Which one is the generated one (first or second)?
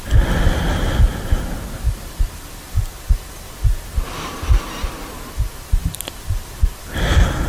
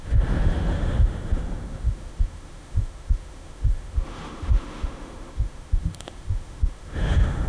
second